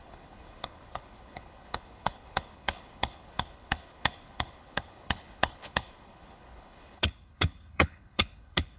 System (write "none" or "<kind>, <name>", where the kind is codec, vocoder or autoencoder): codec, HILCodec